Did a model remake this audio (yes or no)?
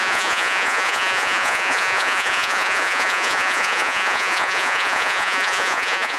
yes